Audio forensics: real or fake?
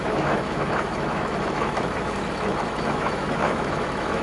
fake